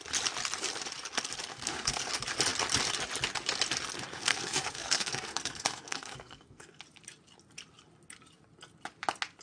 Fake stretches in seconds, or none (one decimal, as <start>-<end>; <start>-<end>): 1.5-2.1; 4.1-6.8